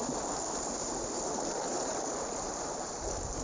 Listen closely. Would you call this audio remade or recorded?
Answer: recorded